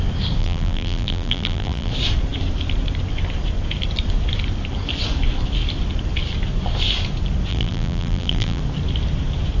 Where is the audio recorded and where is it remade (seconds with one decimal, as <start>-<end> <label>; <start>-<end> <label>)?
0.0-0.4 recorded; 0.4-1.9 remade; 1.9-7.5 recorded; 7.5-8.6 remade; 8.6-9.6 recorded